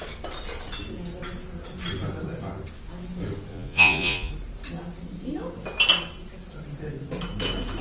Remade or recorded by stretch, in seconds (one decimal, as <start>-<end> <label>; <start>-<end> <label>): 0.0-3.5 recorded; 3.5-4.3 remade; 4.3-7.8 recorded